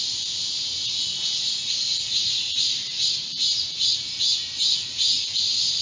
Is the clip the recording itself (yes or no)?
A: no